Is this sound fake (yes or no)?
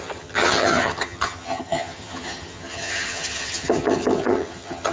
yes